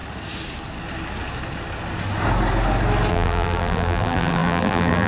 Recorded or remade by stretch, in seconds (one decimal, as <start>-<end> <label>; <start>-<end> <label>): 0.0-3.1 recorded; 3.1-5.1 remade